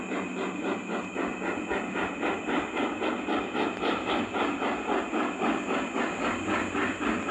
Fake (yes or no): no